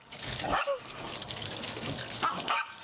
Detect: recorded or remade remade